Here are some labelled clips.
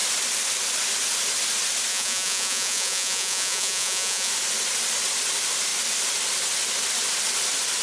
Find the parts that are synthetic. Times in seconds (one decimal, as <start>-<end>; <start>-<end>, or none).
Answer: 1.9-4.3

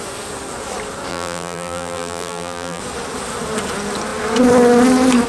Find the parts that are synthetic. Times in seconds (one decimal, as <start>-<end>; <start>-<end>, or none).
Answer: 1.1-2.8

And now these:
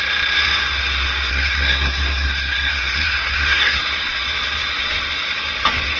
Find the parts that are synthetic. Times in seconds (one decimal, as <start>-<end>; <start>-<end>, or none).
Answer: 1.3-3.8

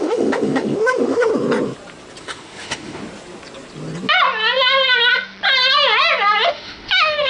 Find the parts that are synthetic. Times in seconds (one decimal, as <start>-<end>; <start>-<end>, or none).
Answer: 0.0-1.3; 2.2-3.0; 6.5-7.3

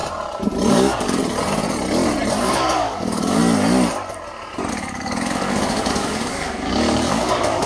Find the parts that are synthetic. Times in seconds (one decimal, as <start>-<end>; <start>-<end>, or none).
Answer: 0.7-1.2; 2.4-3.4; 4.7-7.7

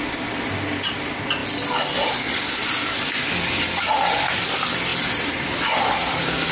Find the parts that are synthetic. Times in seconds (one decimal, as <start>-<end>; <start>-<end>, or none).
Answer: none

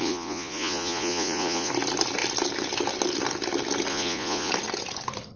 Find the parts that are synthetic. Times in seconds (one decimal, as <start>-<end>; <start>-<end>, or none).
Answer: 0.0-1.7; 3.9-4.5

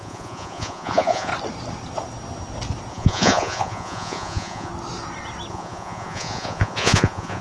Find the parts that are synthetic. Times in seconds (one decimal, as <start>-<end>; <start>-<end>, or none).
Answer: 0.0-1.3; 2.9-4.7; 5.5-7.4